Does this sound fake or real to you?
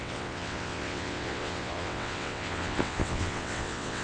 fake